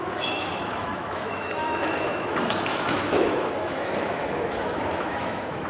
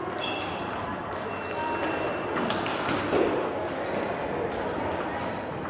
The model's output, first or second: first